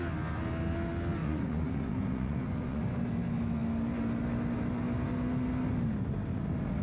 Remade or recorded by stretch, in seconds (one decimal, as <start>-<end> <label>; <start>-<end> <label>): 0.0-1.2 recorded; 1.2-2.8 remade; 2.8-6.8 recorded

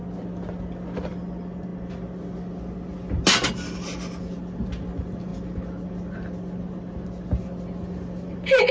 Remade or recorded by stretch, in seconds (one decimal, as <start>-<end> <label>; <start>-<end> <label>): 0.0-8.7 recorded